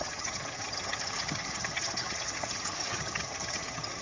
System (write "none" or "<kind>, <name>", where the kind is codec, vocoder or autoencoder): vocoder, HiFi-GAN